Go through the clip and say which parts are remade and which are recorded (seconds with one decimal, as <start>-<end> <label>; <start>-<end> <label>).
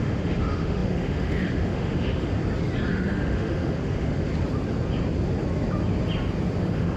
0.0-2.3 remade; 2.3-2.9 recorded; 2.9-4.3 remade; 4.3-6.6 recorded; 6.6-7.0 remade